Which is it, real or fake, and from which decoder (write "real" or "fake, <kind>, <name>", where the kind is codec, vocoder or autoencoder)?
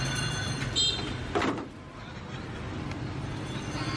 real